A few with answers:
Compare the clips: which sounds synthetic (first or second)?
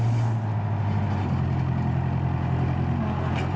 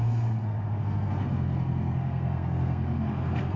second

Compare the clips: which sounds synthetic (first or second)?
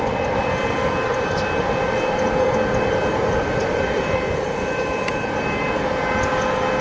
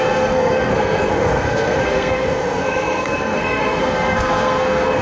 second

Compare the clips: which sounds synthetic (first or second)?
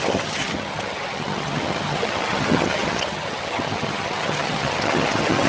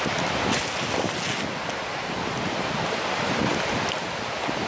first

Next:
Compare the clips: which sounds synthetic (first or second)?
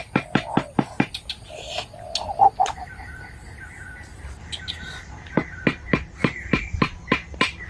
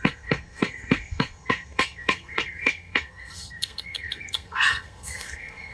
second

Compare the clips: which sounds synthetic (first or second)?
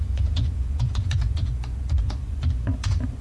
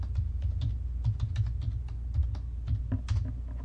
first